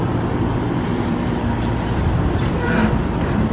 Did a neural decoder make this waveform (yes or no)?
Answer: yes